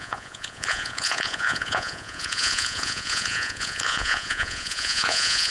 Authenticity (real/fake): fake